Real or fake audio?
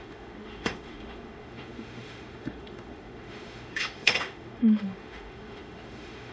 fake